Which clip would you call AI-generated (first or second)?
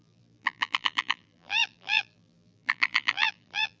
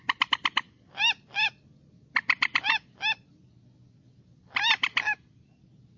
first